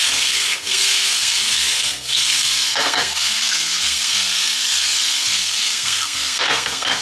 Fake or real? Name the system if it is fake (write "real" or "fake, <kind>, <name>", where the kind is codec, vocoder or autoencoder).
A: fake, codec, SNAC